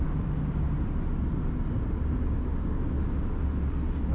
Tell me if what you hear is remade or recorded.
recorded